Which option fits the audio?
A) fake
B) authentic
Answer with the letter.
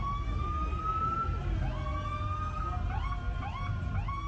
B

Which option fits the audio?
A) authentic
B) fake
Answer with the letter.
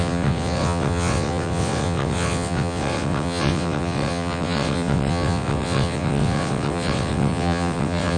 B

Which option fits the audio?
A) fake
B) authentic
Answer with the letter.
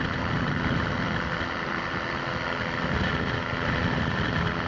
B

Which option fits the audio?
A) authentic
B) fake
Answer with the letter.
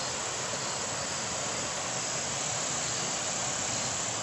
A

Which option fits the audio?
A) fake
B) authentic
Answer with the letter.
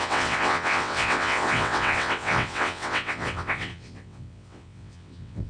A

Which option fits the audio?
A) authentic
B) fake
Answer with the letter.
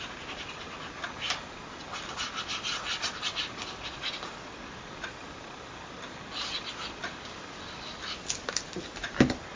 A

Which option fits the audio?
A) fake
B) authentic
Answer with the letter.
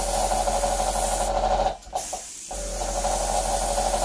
B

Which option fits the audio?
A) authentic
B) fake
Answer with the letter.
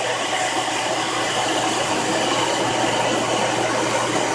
A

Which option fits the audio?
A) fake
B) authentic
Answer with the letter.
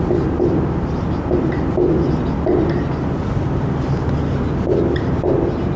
B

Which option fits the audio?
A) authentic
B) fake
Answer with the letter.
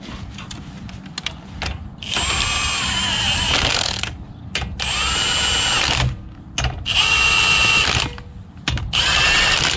A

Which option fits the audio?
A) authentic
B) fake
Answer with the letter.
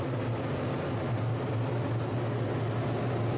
A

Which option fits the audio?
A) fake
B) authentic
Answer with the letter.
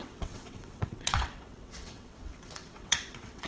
A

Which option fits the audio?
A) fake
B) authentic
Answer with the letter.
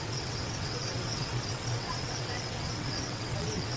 A